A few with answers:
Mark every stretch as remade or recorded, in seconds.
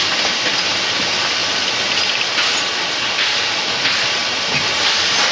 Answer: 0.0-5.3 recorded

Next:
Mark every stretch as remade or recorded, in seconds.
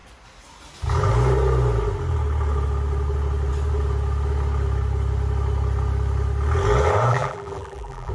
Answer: 0.0-7.1 recorded; 7.1-8.1 remade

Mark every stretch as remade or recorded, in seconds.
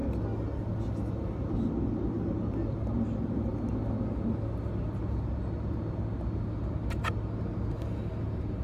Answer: 0.0-8.6 recorded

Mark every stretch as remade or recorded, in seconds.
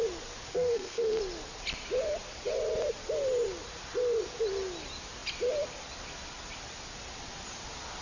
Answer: 0.0-0.5 recorded; 0.5-1.2 remade; 1.2-8.0 recorded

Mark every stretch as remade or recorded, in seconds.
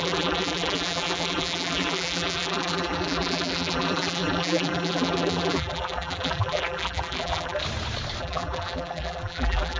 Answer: 0.0-7.6 remade; 7.6-8.2 recorded; 8.2-9.8 remade